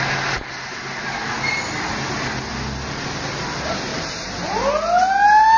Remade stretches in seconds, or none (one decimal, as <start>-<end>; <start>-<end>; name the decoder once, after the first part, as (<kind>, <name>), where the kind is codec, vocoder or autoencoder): 0.5-1.2 (vocoder, BigVGAN v2); 3.9-4.6